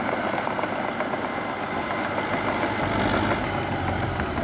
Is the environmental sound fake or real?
real